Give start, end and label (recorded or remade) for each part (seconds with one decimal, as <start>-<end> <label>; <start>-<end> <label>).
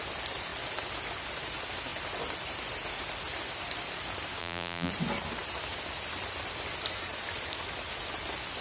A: 0.0-4.4 recorded; 4.4-4.9 remade; 4.9-8.6 recorded